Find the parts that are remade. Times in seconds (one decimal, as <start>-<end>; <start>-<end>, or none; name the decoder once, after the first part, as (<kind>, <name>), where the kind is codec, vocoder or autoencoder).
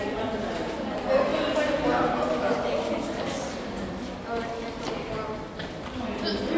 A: none